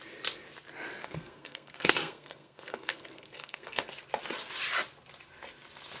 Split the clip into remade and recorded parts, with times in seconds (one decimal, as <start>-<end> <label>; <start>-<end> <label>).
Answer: 0.0-1.0 recorded; 1.0-3.8 remade; 3.8-6.0 recorded